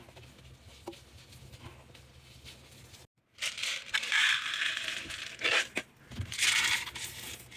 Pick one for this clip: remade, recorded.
recorded